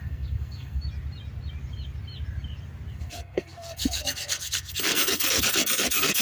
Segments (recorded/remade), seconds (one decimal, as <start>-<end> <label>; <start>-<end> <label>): 0.0-0.8 remade; 0.8-2.9 recorded; 2.9-6.2 remade